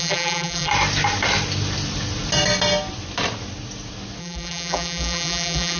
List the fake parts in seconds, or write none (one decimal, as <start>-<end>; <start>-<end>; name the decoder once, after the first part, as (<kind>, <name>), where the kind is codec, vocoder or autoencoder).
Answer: 0.0-0.7 (vocoder, BigVGAN v2); 4.2-5.8